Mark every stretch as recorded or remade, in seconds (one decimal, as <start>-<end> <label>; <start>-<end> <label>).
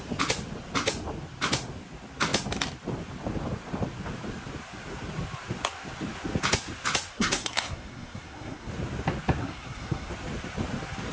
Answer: 0.0-7.1 recorded; 7.1-8.7 remade; 8.7-9.4 recorded; 9.4-10.1 remade; 10.1-11.1 recorded